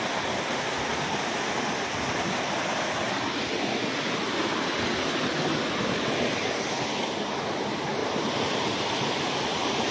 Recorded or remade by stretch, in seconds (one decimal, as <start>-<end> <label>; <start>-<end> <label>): 0.0-0.9 recorded; 0.9-1.7 remade; 1.7-8.0 recorded; 8.0-9.9 remade